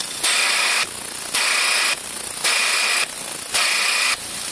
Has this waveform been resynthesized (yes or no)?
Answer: no